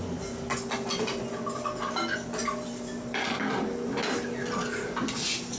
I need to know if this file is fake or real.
real